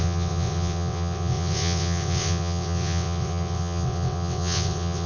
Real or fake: fake